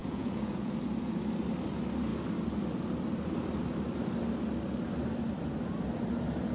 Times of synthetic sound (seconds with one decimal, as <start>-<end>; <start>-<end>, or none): 0.0-0.8